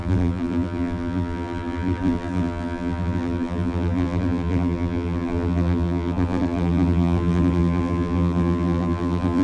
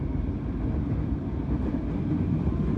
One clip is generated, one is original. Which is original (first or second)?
second